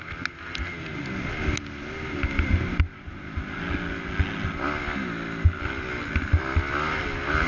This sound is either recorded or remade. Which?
recorded